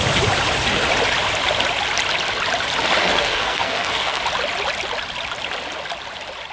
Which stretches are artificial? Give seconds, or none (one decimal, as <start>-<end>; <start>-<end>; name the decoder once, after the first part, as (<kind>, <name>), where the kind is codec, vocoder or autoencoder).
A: 3.0-4.2 (codec, SNAC)